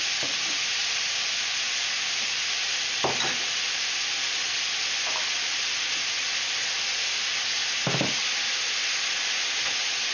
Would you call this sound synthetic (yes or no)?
no